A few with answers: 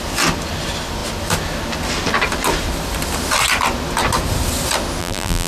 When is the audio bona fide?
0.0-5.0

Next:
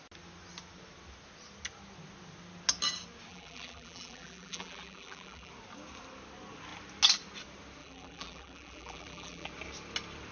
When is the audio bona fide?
0.0-3.3; 5.5-7.8; 9.5-10.3

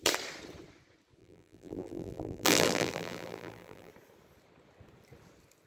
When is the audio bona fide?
0.0-1.2; 3.9-5.7

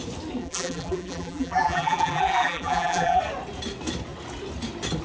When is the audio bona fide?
0.0-0.4; 3.2-5.0

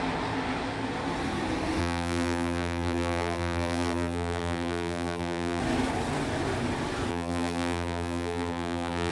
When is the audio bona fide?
0.0-1.8; 5.6-7.1

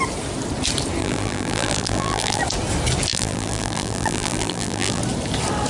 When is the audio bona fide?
0.0-1.0; 2.4-3.1; 5.0-5.7

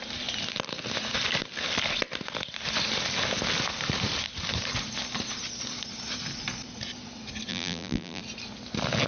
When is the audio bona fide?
0.0-7.5; 8.2-9.1